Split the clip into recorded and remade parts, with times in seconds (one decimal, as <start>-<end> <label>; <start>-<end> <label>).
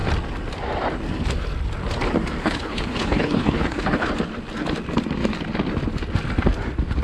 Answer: 0.0-2.4 recorded; 2.4-4.1 remade; 4.1-7.0 recorded